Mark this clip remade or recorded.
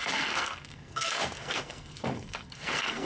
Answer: remade